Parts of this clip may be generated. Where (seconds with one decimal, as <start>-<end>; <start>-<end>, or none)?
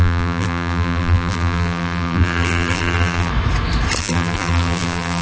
0.0-3.3; 4.0-5.2